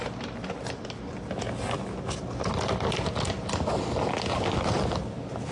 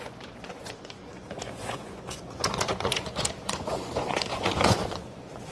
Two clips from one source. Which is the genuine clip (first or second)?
first